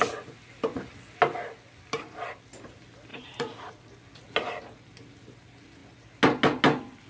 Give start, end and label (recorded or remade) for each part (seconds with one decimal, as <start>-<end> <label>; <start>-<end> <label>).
0.0-3.1 recorded; 3.1-3.8 remade; 3.8-7.1 recorded